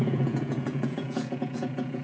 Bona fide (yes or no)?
no